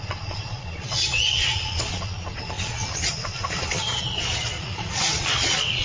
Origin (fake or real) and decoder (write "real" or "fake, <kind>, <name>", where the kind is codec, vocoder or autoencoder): fake, vocoder, Vocos